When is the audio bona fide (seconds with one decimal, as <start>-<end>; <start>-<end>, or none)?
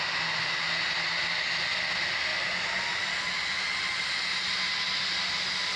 0.0-5.8